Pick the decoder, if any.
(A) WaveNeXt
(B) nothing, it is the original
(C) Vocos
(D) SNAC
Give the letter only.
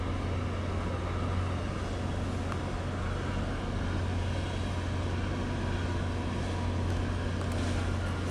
B